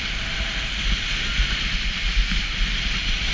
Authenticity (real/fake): real